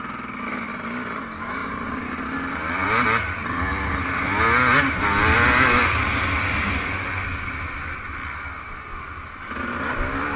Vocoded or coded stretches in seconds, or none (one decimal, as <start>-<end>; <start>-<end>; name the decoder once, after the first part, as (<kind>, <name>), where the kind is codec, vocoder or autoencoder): none